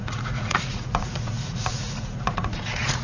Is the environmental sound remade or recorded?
remade